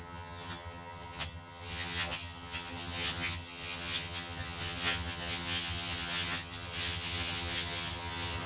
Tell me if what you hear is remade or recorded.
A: remade